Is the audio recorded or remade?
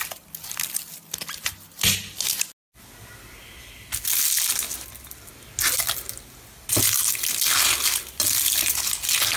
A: recorded